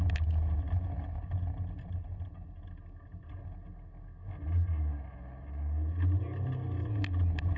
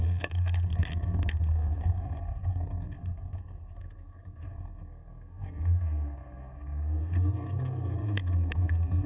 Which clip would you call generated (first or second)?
second